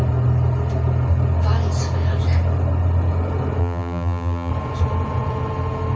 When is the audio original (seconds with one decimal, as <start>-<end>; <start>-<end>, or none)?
0.0-3.6; 4.5-6.0